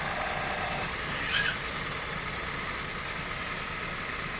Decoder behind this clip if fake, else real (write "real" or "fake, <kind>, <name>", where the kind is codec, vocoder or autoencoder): real